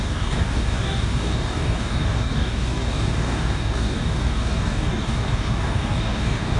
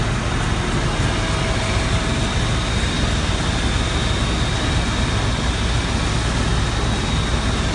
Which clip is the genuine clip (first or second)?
second